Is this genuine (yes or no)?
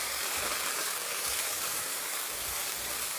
no